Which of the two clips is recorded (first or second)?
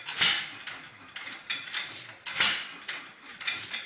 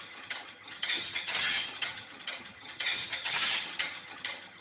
first